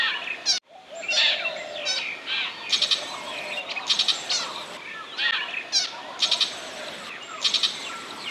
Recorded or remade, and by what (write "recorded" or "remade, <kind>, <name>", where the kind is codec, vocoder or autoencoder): recorded